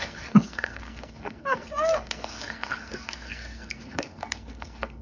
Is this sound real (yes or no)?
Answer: no